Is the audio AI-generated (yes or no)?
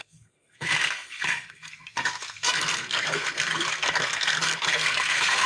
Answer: yes